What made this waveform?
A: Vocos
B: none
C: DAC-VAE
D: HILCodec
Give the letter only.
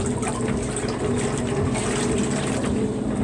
B